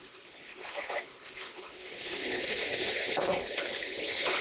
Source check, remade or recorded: remade